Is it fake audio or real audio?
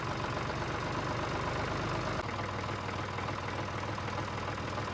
real